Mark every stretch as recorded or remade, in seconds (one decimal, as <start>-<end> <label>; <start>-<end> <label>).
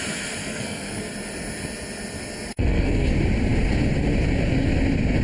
0.0-0.4 recorded; 0.4-1.0 remade; 1.0-2.5 recorded; 2.5-3.1 remade; 3.1-5.2 recorded